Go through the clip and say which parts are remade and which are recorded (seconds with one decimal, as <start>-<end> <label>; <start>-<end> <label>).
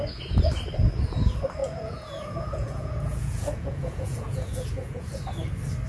0.0-1.6 recorded; 1.6-5.1 remade; 5.1-5.9 recorded